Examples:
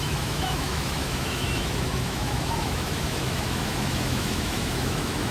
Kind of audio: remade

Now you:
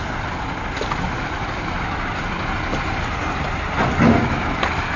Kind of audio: recorded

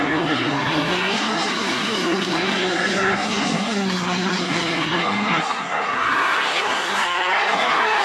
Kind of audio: remade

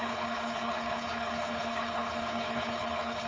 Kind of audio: remade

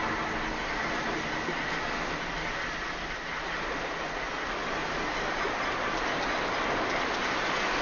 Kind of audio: recorded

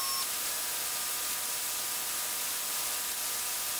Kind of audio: recorded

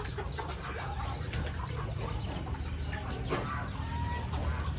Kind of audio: recorded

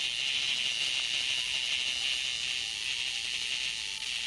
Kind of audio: recorded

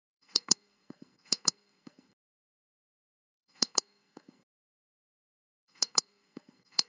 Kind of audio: remade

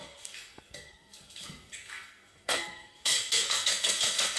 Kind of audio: remade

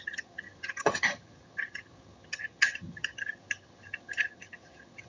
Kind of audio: remade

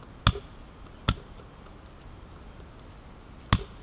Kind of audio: recorded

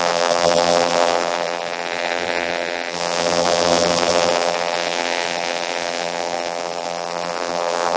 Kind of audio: remade